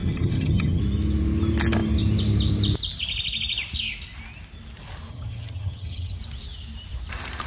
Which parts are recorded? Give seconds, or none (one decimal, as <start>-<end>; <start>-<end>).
0.8-5.1; 6.2-7.5